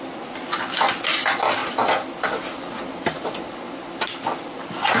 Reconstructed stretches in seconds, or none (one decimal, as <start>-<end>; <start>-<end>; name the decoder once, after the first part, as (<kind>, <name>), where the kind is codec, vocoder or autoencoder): none